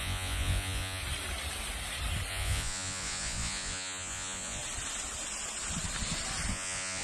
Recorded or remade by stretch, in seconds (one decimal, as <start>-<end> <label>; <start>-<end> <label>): 0.0-1.0 remade; 1.0-2.3 recorded; 2.3-4.6 remade; 4.6-6.5 recorded; 6.5-7.0 remade